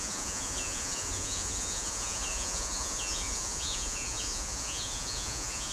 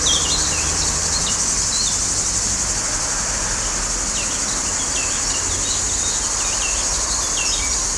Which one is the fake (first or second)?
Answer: first